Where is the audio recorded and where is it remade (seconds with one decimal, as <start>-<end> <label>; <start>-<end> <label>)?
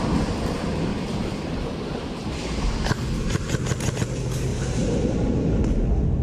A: 0.0-0.9 recorded; 0.9-3.6 remade; 3.6-4.5 recorded; 4.5-5.6 remade; 5.6-6.2 recorded